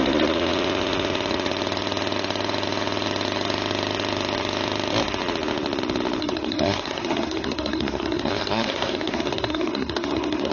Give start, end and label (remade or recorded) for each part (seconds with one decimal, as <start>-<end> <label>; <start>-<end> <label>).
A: 0.0-6.2 recorded; 6.2-10.5 remade